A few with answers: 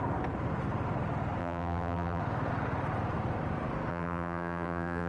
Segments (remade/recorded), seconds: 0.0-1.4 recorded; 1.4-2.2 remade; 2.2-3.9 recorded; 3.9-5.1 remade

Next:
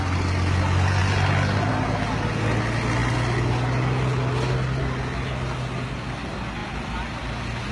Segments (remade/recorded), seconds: 0.0-7.7 recorded

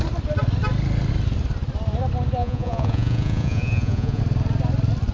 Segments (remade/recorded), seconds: 0.0-2.4 recorded; 2.4-4.2 remade; 4.2-5.1 recorded

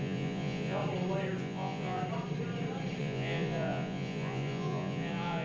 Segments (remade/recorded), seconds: 0.0-0.8 remade; 0.8-1.4 recorded; 1.4-2.0 remade; 2.0-3.0 recorded; 3.0-5.4 remade